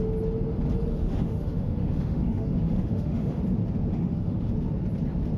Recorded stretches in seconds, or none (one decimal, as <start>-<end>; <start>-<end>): 0.0-0.9; 3.4-3.9; 4.5-5.4